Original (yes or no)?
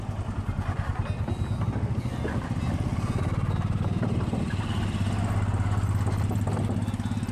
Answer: yes